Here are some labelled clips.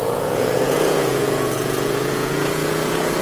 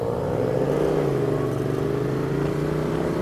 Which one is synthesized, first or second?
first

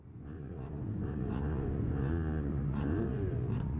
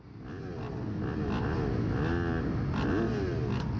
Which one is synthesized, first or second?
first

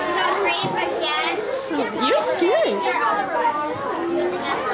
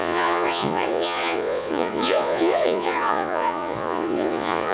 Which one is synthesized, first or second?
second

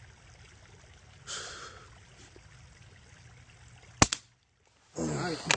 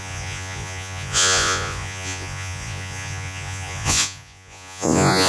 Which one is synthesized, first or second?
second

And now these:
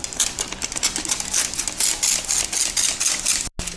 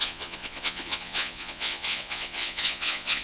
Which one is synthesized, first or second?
second